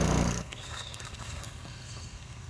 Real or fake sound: fake